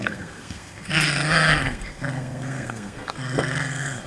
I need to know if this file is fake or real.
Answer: fake